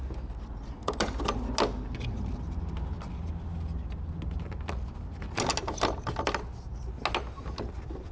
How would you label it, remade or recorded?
recorded